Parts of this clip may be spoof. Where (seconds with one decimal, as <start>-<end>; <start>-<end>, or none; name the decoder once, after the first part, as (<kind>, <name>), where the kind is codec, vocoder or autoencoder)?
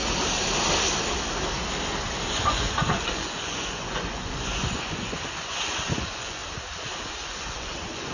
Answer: 2.3-6.4 (vocoder, Vocos); 7.0-8.1